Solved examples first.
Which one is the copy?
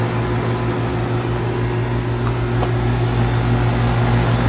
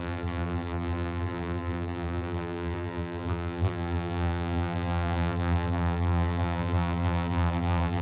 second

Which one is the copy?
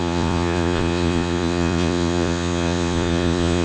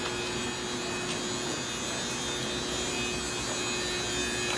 first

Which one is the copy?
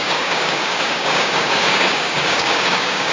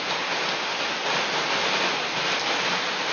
first